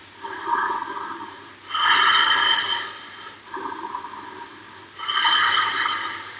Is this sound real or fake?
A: real